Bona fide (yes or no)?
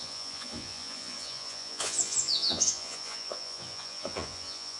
no